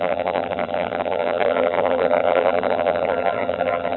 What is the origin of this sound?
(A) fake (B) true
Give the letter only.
A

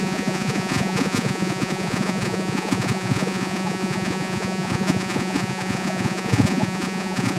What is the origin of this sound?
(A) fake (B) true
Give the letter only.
A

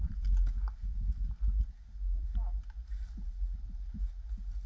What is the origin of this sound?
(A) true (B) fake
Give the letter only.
A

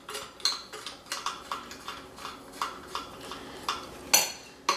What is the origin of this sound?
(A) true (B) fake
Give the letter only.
A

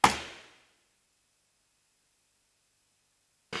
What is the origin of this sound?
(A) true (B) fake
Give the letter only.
A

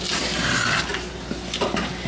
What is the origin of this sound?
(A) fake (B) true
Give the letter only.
B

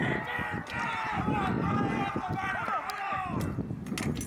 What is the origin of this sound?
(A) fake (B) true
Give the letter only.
B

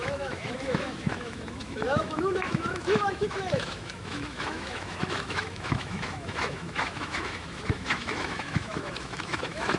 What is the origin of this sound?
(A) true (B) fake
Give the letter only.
B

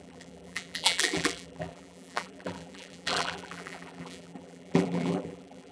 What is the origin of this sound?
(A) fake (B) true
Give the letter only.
A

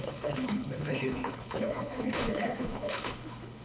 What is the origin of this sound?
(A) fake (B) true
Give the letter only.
A